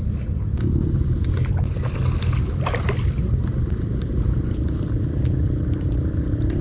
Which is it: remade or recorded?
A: recorded